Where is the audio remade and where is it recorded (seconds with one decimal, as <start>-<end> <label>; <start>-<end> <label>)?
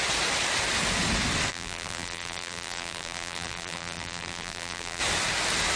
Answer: 0.0-1.5 recorded; 1.5-5.0 remade; 5.0-5.8 recorded